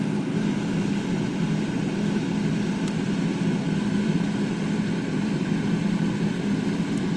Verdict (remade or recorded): remade